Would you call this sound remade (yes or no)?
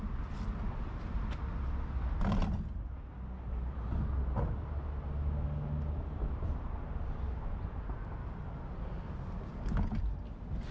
no